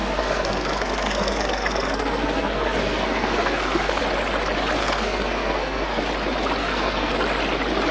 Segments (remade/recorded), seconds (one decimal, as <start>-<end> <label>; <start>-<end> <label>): 0.0-4.0 remade; 4.0-4.8 recorded; 4.8-6.0 remade; 6.0-6.6 recorded; 6.6-7.1 remade; 7.1-7.9 recorded